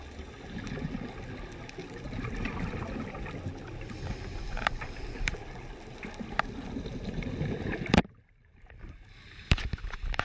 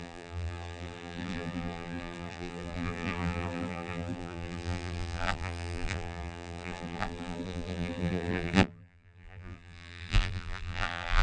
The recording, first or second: first